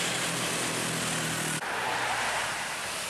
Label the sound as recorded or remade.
recorded